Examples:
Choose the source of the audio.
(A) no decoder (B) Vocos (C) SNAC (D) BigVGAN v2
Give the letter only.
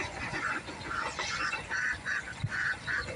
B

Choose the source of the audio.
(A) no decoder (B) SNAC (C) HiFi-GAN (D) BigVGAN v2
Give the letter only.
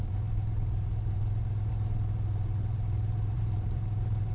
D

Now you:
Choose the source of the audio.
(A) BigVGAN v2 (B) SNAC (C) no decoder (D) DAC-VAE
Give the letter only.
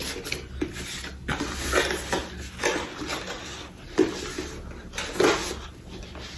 C